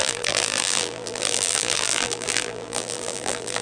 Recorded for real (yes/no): no